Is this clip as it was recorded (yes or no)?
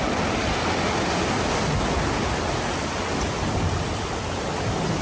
yes